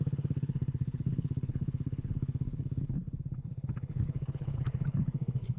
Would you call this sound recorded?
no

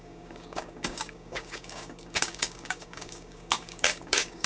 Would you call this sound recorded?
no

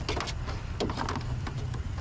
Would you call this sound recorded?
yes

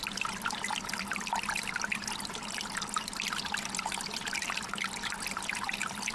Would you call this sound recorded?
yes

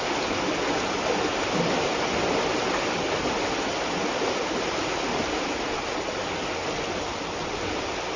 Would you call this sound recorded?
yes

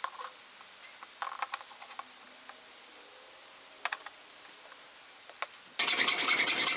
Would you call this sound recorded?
yes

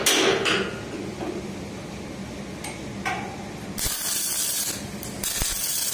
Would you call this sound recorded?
yes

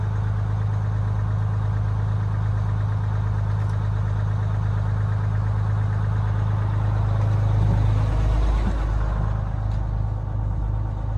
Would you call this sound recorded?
yes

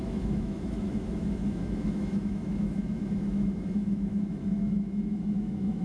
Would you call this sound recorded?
no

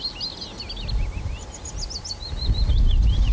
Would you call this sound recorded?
yes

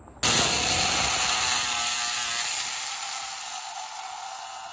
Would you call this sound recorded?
yes